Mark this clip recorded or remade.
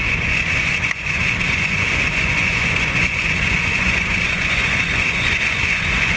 remade